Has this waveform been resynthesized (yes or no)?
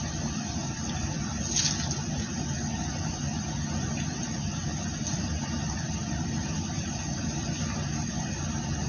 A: no